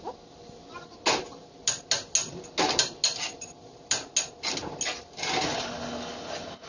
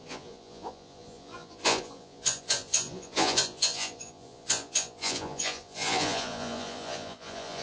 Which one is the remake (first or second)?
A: second